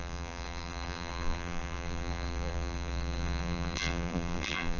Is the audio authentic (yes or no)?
no